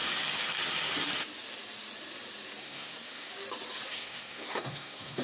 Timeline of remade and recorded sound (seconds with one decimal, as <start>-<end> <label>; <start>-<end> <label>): 0.0-2.6 recorded; 2.6-3.3 remade; 3.3-3.9 recorded; 3.9-5.2 remade